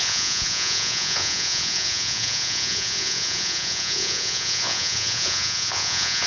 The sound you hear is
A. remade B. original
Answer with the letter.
A